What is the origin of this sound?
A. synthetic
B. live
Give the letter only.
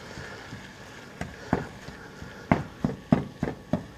B